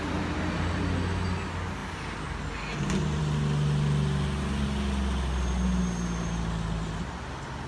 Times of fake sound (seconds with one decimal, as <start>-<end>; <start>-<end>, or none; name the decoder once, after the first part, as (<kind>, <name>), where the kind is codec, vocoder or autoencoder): none